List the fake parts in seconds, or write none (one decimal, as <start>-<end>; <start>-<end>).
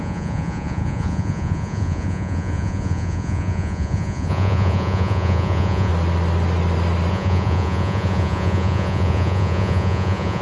0.0-5.9; 7.1-10.4